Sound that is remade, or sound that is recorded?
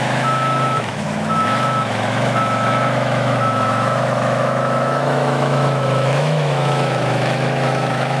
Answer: remade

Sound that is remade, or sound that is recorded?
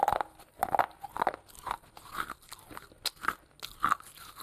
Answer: recorded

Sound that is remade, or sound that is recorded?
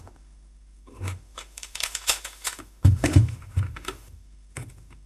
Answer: remade